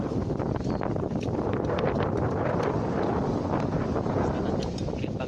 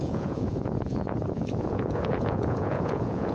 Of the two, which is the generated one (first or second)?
second